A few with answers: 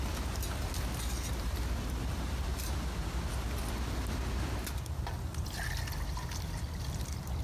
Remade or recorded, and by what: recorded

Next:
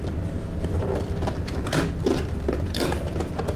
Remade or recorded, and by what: recorded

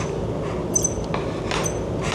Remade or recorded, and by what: recorded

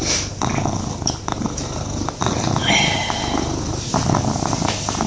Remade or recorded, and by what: recorded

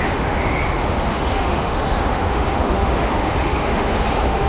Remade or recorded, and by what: remade, autoencoder, DAC-VAE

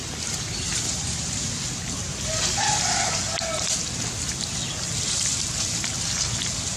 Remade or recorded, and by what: recorded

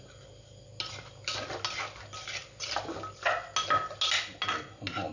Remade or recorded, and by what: recorded